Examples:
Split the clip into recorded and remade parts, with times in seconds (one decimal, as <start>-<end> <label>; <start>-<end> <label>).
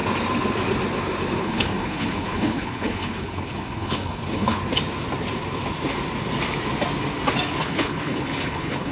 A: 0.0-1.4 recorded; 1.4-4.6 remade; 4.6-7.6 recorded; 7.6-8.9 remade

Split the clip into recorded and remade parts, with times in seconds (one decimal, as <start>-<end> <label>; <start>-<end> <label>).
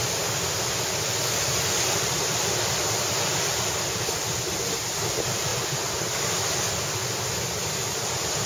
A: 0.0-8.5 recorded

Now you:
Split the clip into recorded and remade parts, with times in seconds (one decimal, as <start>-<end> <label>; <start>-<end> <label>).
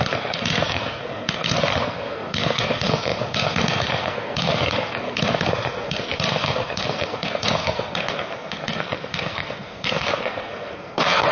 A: 0.0-11.3 remade